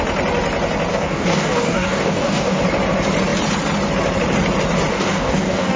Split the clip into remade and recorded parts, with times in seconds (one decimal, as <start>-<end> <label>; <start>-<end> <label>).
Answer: 0.0-0.9 recorded; 0.9-2.6 remade; 2.6-4.9 recorded; 4.9-5.8 remade